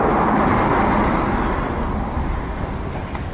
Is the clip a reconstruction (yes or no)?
no